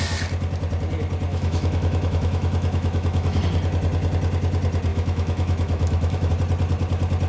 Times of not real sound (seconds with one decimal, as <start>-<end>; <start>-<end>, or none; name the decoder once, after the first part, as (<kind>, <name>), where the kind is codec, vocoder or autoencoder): 1.3-3.4 (autoencoder, DAC-VAE); 4.9-6.3